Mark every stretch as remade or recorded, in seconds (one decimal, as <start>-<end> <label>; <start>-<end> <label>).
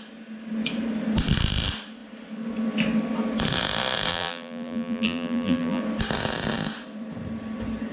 0.0-4.1 recorded; 4.1-5.8 remade; 5.8-7.9 recorded